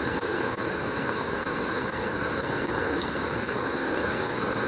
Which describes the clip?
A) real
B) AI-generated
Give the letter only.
B